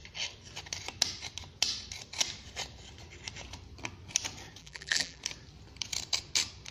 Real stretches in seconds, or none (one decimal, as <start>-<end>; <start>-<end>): 0.0-4.6; 5.2-6.7